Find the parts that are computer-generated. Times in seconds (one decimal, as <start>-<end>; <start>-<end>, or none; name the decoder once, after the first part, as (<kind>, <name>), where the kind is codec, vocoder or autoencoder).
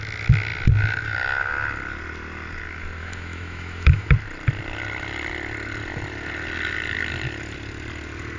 3.0-4.1 (autoencoder, DAC-VAE)